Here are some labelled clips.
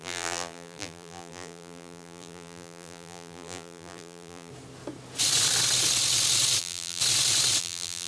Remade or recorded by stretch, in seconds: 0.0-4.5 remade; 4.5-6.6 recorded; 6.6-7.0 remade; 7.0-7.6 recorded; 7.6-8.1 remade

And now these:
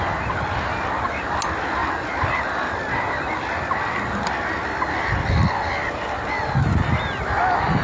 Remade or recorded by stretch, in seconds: 0.0-7.8 recorded

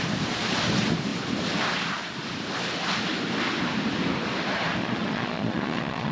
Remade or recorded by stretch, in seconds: 0.0-4.8 recorded; 4.8-6.1 remade

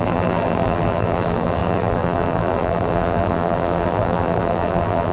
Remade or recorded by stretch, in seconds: 0.0-5.1 remade